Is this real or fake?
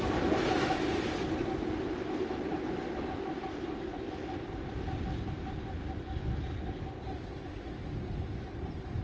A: real